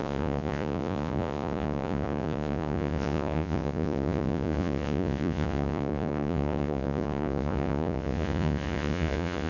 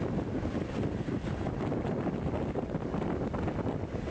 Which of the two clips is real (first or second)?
second